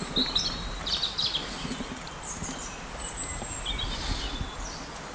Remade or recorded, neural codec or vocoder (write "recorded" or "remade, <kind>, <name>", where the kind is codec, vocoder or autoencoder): recorded